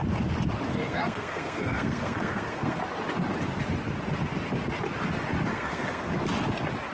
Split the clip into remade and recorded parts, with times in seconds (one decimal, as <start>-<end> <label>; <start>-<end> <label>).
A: 0.0-0.7 recorded; 0.7-2.8 remade; 2.8-5.5 recorded; 5.5-6.1 remade; 6.1-6.9 recorded